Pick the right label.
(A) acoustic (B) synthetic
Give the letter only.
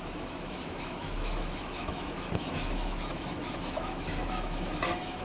B